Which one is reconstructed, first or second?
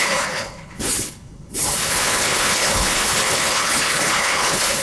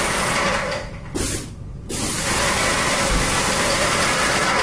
first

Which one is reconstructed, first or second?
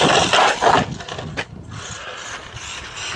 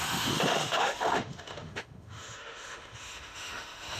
second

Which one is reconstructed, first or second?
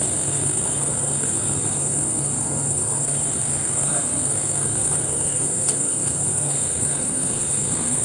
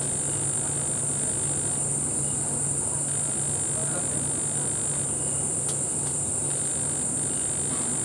first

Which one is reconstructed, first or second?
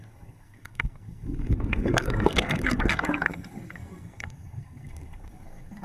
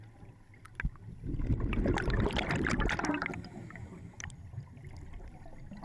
first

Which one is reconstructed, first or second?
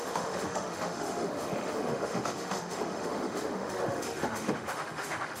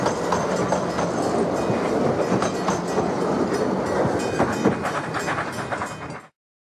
first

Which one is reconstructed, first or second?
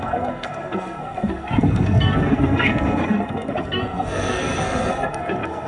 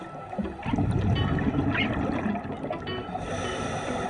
first